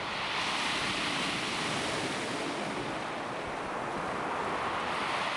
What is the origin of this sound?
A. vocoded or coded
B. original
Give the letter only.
B